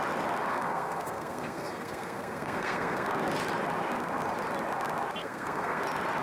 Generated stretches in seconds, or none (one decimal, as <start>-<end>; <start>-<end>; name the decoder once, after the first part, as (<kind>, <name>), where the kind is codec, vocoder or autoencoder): 0.5-3.1 (codec, SNAC); 5.2-5.8